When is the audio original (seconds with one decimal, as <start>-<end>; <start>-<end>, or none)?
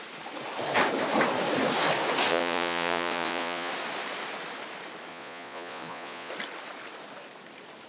0.0-2.3; 3.7-5.1; 6.3-7.9